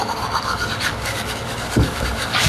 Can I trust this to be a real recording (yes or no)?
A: no